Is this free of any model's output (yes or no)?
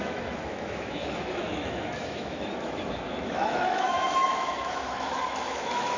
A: no